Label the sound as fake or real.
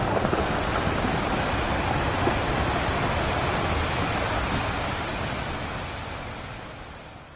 real